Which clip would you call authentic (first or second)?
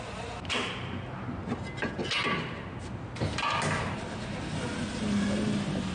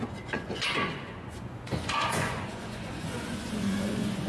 first